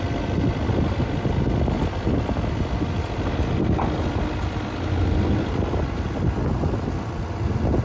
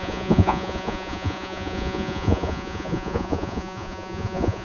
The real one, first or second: first